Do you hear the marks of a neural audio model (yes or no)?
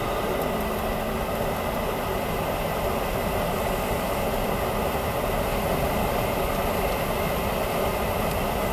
no